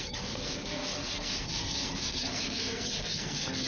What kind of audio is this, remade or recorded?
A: remade